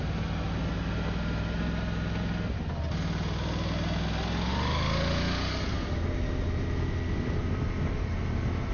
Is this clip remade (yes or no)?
no